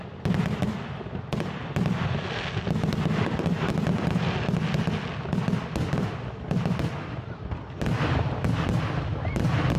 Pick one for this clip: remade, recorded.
recorded